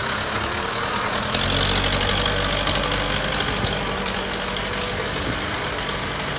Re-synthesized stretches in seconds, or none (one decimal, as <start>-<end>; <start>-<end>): none